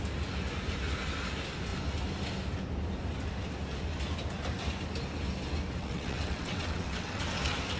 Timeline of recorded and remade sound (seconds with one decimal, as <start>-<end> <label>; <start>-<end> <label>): 0.0-5.8 recorded; 5.8-7.2 remade; 7.2-7.8 recorded